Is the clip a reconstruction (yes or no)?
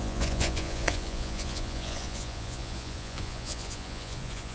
yes